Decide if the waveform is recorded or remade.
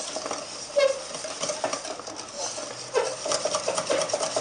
recorded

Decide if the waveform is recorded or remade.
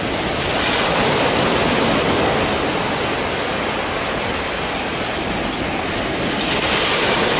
recorded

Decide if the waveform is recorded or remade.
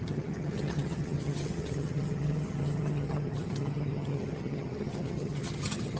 remade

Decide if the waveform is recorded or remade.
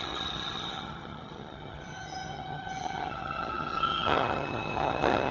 remade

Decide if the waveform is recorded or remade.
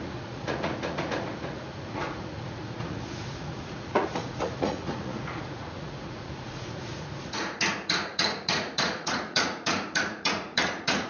remade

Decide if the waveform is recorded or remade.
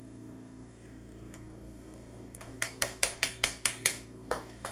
remade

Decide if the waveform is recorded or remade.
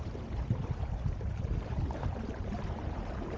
remade